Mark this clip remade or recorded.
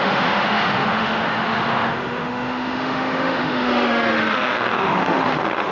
remade